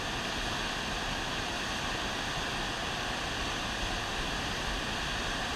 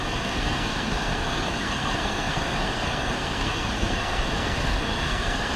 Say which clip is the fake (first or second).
second